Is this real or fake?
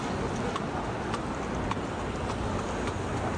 real